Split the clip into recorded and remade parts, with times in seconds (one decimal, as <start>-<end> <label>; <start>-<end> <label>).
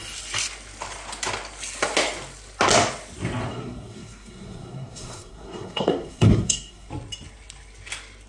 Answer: 0.0-3.5 recorded; 3.5-6.9 remade; 6.9-8.3 recorded